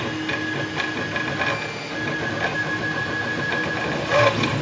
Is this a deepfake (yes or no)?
no